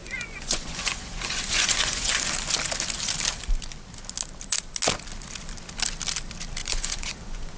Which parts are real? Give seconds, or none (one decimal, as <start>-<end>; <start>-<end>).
2.3-6.6

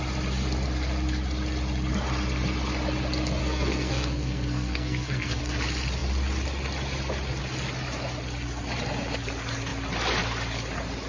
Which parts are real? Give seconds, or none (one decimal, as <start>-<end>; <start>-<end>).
0.0-3.4; 5.4-11.1

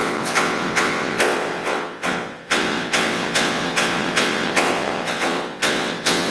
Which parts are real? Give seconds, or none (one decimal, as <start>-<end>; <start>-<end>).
none

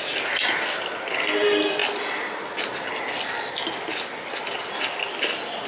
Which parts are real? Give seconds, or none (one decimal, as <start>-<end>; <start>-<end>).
0.0-5.7

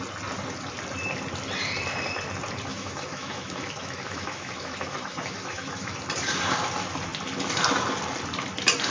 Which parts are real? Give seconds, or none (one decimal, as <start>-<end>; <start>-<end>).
0.0-2.7; 6.0-8.9

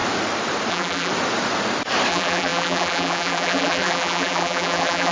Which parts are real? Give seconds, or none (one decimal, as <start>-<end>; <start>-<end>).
0.0-0.7; 1.1-2.1